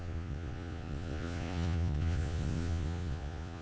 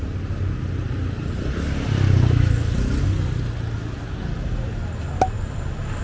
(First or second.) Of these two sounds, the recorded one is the second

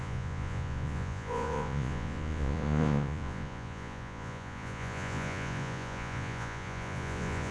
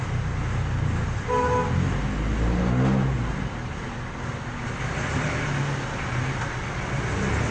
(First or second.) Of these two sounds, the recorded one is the second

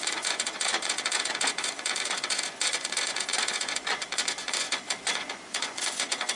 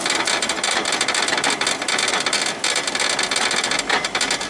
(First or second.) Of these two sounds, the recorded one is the second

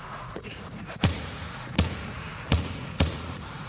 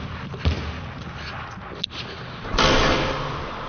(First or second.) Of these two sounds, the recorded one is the second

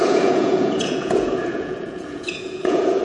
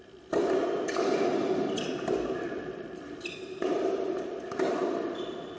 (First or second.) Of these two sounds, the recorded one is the second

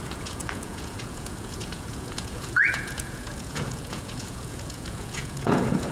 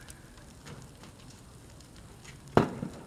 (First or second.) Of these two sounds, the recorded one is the second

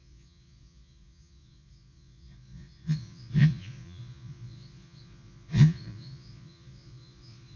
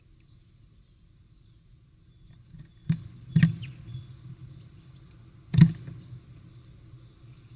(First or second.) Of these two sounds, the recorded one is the second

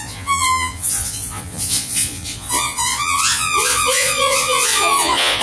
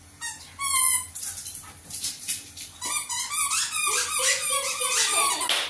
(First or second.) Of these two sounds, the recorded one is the second